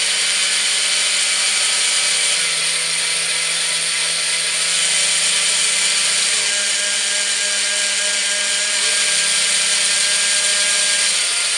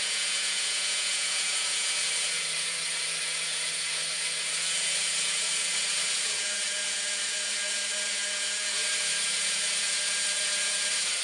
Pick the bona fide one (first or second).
first